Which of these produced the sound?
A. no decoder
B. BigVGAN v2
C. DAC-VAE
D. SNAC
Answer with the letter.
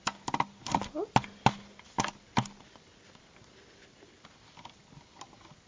A